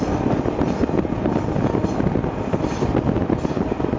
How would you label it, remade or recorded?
recorded